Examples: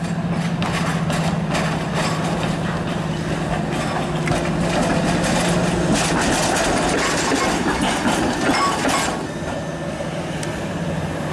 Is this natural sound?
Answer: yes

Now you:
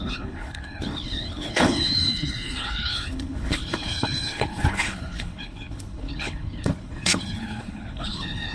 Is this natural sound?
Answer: no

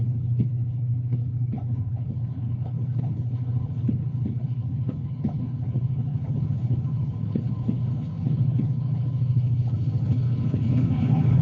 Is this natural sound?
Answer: no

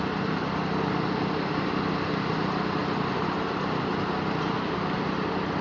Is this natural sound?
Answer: yes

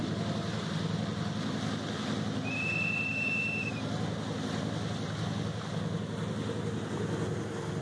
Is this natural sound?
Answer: yes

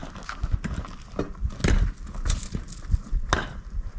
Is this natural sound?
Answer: yes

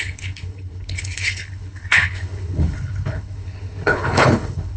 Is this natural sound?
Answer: no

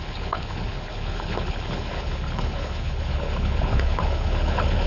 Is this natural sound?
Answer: no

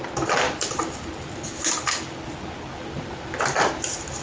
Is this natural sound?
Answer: yes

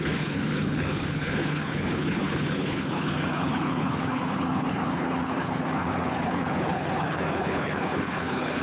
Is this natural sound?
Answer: no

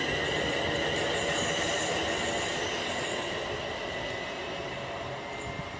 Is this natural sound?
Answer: yes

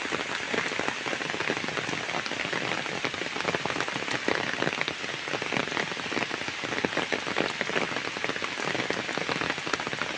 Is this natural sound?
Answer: yes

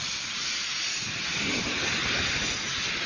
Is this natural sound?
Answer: yes